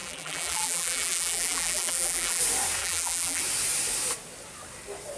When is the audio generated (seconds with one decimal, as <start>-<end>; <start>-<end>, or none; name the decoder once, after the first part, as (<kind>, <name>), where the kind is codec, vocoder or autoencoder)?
0.0-2.4 (vocoder, BigVGAN v2); 2.8-3.4